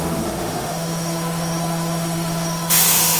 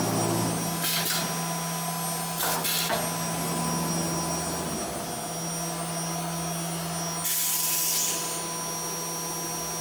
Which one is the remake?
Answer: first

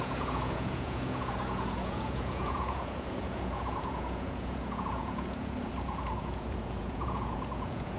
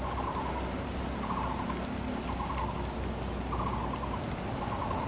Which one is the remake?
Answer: first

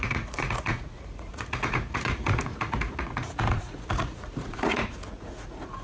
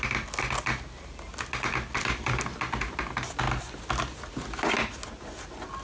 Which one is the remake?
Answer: first